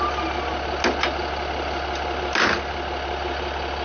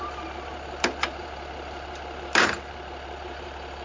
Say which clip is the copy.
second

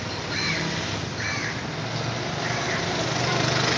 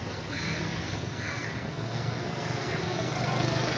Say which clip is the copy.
second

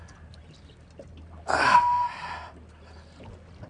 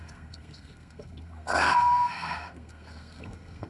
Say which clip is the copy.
second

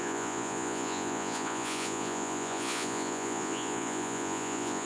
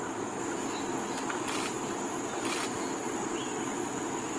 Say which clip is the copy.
first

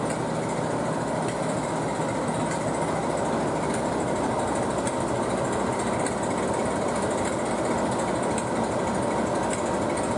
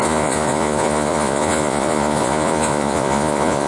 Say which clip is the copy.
second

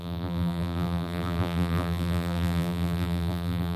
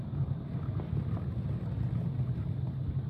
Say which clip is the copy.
first